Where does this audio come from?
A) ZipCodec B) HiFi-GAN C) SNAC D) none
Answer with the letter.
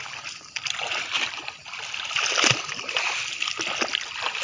D